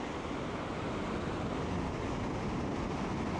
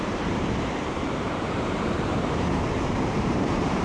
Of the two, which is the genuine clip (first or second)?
first